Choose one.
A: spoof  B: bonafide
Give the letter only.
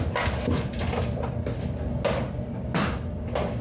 B